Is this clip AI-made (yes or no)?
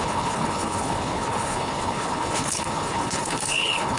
yes